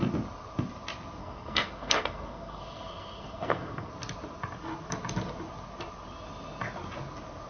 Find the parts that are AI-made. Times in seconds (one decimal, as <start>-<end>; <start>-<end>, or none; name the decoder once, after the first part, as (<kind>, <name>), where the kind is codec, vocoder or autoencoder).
1.2-3.9 (codec, SNAC)

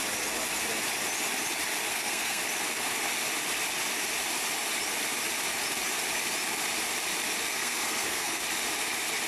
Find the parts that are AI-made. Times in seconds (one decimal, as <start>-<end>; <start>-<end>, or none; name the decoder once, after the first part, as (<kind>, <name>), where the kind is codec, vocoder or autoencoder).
1.9-2.4 (codec, SNAC); 7.5-8.4